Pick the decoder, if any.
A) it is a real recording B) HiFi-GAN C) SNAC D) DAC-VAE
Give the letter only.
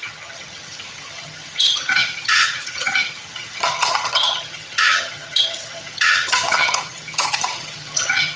B